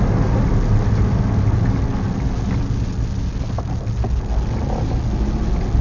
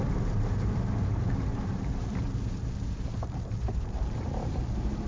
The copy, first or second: second